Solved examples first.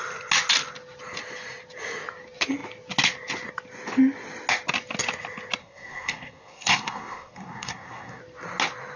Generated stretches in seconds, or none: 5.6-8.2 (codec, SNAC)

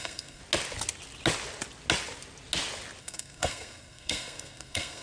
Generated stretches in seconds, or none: 0.0-0.4 (codec, SNAC); 3.0-5.0

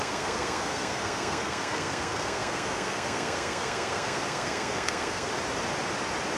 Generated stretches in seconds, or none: 0.0-5.3 (codec, SNAC)

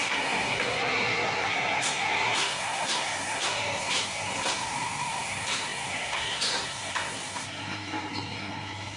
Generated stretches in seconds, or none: 0.0-9.0 (codec, SNAC)

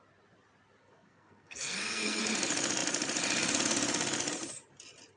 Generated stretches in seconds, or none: 0.8-2.2 (codec, SNAC)